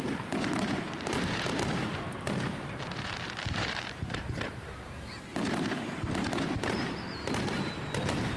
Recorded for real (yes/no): no